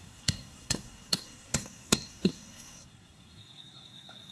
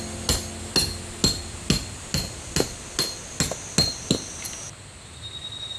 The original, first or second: second